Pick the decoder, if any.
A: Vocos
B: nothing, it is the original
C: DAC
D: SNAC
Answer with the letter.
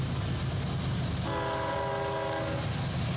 B